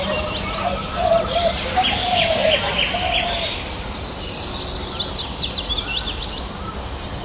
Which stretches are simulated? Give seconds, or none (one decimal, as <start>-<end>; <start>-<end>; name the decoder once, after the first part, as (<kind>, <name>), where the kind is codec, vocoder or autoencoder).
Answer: none